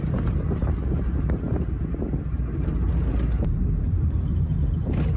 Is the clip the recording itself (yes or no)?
yes